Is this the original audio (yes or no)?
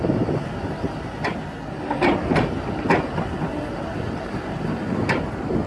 yes